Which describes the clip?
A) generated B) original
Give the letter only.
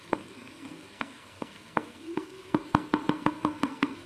A